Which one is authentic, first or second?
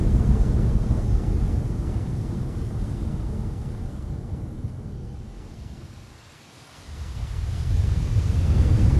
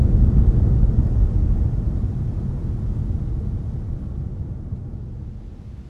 second